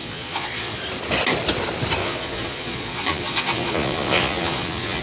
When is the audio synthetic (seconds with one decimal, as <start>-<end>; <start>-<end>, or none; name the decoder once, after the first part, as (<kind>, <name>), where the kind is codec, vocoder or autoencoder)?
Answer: 0.0-0.8 (vocoder, Vocos); 2.0-5.0